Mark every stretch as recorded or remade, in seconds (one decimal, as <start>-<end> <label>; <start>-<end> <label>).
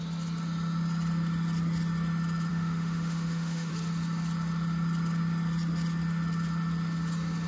0.0-2.5 recorded; 2.5-3.7 remade; 3.7-7.5 recorded